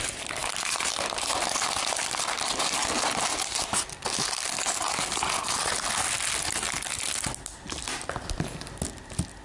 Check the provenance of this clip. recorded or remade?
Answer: recorded